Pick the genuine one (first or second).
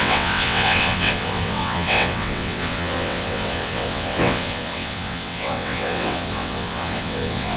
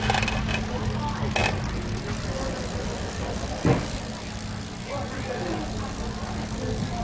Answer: second